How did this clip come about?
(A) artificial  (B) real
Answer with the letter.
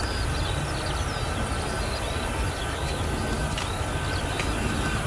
B